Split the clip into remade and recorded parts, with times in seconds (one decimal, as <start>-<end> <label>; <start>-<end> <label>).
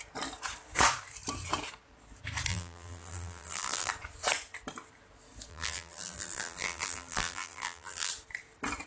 0.0-2.5 recorded; 2.5-3.9 remade; 3.9-5.5 recorded; 5.5-8.1 remade; 8.1-8.9 recorded